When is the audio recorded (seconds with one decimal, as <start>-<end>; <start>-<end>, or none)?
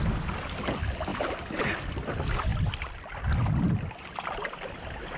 0.0-5.2